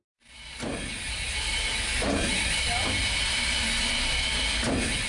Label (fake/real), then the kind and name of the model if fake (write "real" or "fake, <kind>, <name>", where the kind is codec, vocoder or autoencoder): real